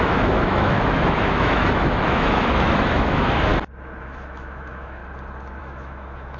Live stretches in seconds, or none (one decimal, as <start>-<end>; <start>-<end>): 3.5-4.0; 5.0-5.6